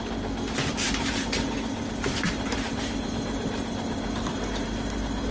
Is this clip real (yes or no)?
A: yes